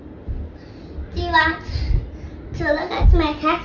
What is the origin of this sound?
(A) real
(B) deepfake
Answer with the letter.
A